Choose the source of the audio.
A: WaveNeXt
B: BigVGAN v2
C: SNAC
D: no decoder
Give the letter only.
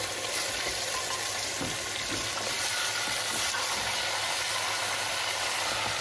D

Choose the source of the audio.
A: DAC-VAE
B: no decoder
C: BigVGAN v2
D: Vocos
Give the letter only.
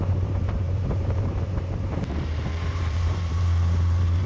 C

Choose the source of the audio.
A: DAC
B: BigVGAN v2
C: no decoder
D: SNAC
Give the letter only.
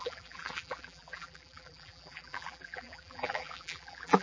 B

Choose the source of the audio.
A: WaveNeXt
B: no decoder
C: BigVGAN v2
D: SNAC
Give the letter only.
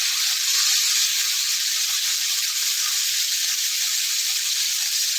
C